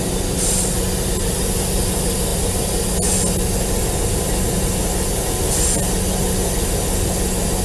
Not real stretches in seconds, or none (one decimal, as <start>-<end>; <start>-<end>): none